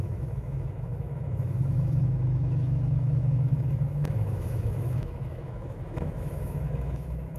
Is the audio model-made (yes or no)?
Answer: yes